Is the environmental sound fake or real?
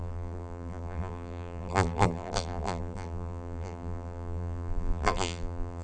fake